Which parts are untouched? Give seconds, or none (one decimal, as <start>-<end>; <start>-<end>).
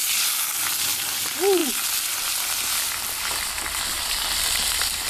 0.0-5.1